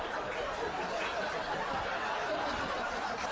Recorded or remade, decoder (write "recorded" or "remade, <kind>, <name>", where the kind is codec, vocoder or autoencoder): recorded